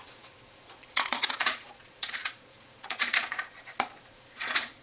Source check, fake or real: fake